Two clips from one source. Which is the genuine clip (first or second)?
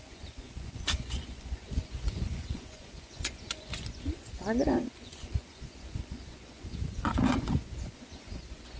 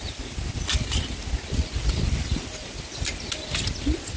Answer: second